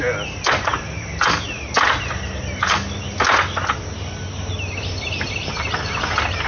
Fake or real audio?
real